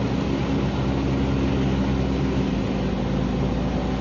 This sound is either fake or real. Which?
real